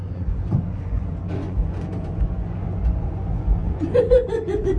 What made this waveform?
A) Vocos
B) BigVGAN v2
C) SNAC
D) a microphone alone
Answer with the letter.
A